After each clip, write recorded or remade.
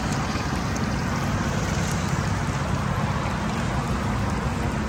recorded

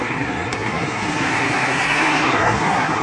remade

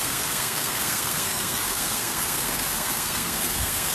remade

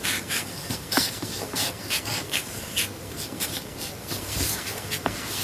remade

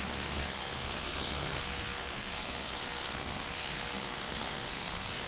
remade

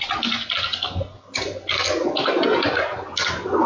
recorded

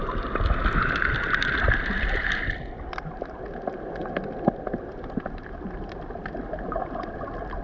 recorded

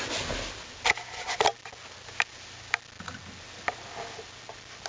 recorded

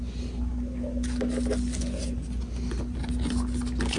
recorded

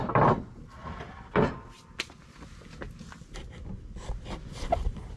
recorded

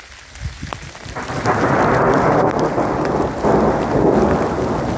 recorded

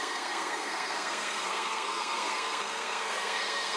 remade